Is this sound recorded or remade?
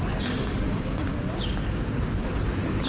recorded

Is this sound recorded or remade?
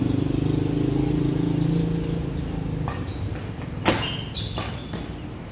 recorded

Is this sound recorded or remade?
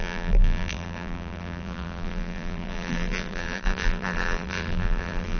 remade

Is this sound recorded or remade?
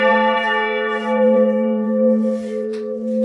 remade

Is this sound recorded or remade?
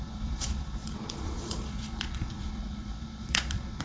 remade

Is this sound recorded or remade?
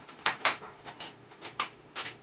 remade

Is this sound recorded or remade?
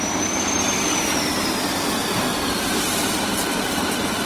recorded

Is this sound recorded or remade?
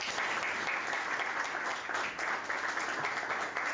recorded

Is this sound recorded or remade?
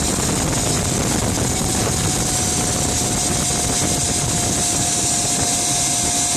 recorded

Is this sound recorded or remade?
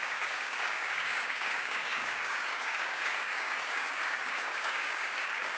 remade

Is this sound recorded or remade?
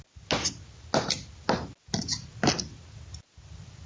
recorded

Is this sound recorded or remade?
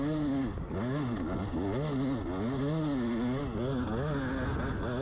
recorded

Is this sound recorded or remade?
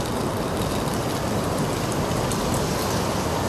recorded